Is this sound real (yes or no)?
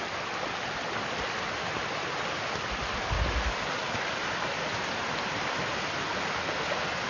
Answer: yes